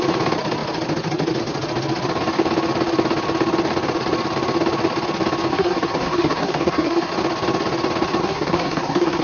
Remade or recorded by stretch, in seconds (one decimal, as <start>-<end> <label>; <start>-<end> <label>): 0.0-5.5 recorded; 5.5-7.1 remade; 7.1-8.2 recorded; 8.2-9.2 remade

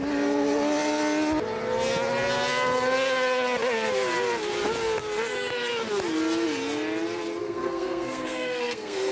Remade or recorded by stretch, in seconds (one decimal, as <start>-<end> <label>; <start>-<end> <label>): 0.0-7.4 recorded; 7.4-9.1 remade

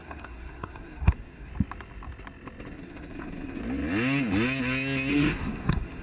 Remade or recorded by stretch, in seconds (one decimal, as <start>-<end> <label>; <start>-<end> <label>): 0.0-1.5 remade; 1.5-2.7 recorded; 2.7-3.6 remade; 3.6-5.1 recorded; 5.1-6.0 remade